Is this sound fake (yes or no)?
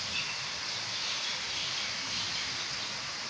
no